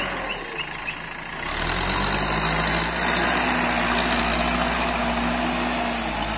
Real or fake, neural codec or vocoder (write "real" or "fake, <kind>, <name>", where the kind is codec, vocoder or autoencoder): real